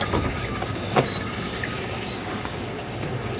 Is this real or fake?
fake